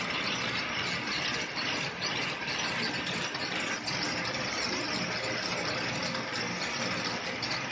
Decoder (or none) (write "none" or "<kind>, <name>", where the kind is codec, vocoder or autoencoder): none